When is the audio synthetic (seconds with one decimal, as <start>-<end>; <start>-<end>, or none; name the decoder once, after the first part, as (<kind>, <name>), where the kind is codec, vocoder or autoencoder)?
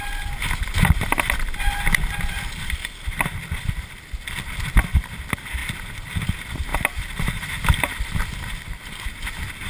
none